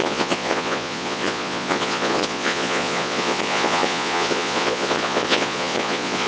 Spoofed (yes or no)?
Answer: yes